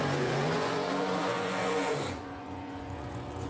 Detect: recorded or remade remade